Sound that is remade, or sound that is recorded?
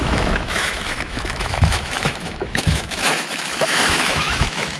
remade